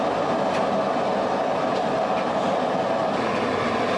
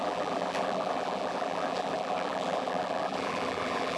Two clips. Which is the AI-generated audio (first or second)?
second